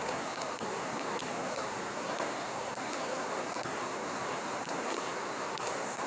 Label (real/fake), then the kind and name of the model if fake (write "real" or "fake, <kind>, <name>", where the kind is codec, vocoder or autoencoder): fake, codec, SNAC